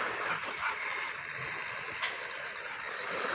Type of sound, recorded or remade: recorded